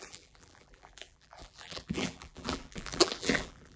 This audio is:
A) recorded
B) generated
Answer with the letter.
B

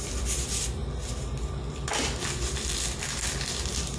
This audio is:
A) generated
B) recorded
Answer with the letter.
B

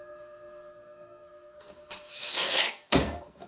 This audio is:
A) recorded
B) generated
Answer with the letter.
B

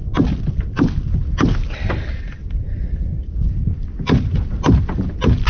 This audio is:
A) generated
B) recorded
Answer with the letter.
B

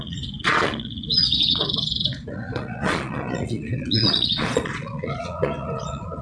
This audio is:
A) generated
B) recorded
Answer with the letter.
A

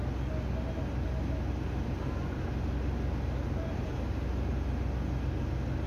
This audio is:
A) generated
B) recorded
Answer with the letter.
B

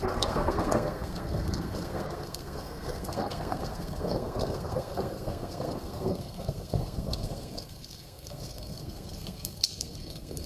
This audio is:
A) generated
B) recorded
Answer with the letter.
A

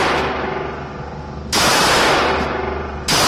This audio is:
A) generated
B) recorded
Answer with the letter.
B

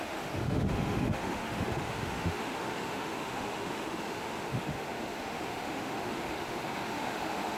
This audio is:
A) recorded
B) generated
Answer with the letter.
B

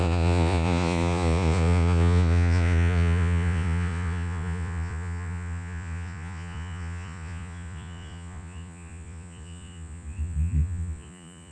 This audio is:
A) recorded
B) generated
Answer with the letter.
B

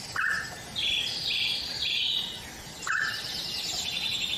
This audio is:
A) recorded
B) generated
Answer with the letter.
A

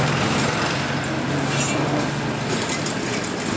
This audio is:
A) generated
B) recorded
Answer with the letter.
B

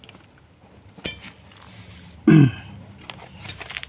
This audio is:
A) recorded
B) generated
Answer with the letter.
A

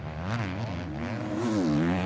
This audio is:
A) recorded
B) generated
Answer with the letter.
A